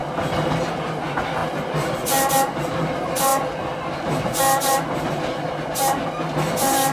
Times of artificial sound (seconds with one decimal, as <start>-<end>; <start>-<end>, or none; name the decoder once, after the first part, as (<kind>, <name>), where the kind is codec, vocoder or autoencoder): none